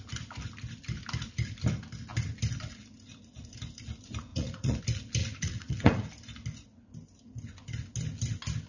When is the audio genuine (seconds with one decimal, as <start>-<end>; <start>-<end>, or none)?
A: 0.0-4.3; 4.8-5.2; 6.1-8.7